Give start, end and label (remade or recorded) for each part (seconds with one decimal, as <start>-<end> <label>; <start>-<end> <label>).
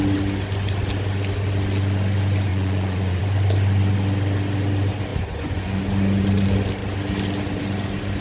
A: 0.0-2.5 recorded; 2.5-3.2 remade; 3.2-5.1 recorded; 5.1-5.8 remade; 5.8-8.2 recorded